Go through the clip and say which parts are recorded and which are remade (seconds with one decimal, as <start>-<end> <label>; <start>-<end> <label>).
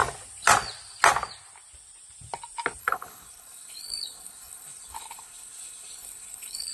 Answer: 0.0-2.8 recorded; 2.8-6.7 remade